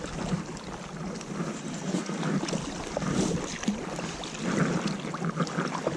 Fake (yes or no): no